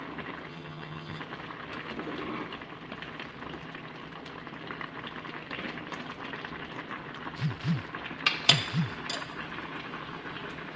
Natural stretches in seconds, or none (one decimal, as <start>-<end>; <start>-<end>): 0.0-0.5; 1.2-10.8